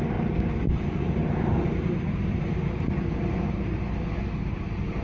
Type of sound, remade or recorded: recorded